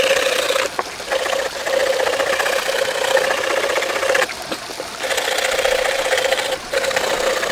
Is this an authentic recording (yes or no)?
yes